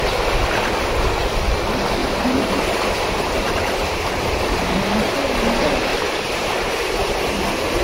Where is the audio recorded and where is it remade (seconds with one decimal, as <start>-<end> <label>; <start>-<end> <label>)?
0.0-2.0 recorded; 2.0-4.7 remade; 4.7-5.9 recorded; 5.9-7.8 remade